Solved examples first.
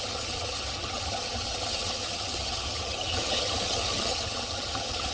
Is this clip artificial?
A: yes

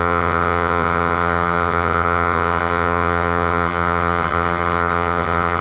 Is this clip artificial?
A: yes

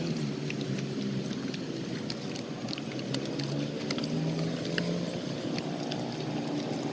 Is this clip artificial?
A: no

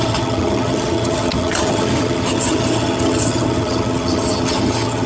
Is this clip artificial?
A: yes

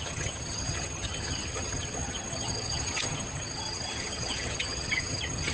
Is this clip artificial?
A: yes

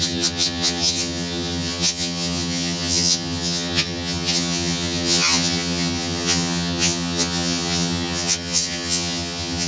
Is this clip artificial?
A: yes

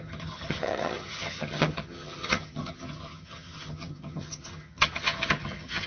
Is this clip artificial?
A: yes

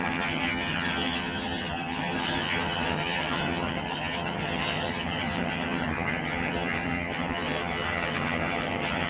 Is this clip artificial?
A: yes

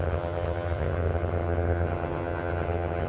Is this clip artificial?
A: yes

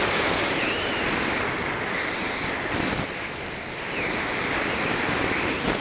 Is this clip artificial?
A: no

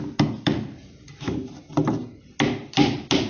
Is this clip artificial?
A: no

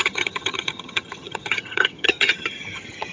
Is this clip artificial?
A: yes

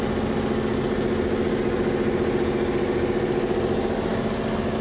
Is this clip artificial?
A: no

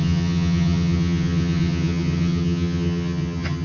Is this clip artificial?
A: yes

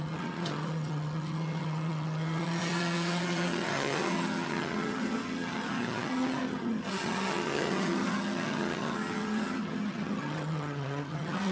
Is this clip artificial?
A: yes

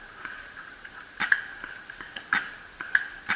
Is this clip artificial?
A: no